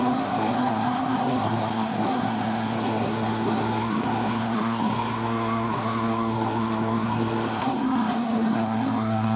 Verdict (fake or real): fake